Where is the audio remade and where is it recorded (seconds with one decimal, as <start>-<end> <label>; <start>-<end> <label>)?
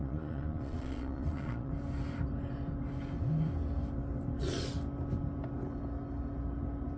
0.0-1.7 remade; 1.7-7.0 recorded